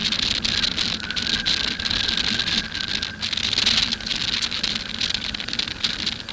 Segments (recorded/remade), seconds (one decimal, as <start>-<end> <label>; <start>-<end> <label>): 0.0-6.3 recorded